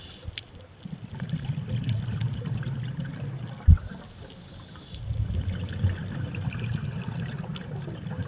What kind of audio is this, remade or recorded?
recorded